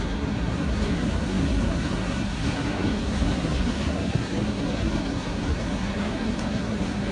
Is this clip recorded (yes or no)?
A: no